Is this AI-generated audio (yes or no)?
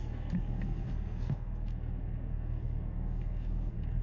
yes